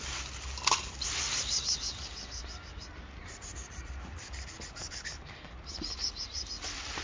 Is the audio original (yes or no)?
yes